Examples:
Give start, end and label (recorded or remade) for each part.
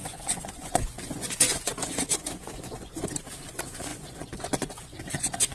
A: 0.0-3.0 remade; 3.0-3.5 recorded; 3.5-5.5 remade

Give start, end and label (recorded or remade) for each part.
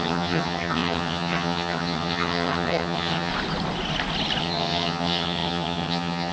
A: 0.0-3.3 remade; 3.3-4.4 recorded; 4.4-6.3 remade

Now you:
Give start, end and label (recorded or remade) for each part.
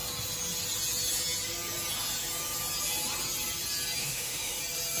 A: 0.0-4.0 recorded; 4.0-4.6 remade; 4.6-5.0 recorded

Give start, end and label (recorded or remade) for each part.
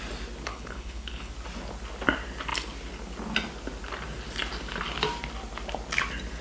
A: 0.0-0.5 recorded; 0.5-1.3 remade; 1.3-6.4 recorded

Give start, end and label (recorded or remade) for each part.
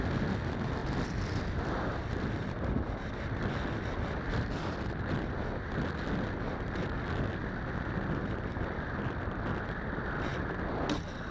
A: 0.0-11.3 recorded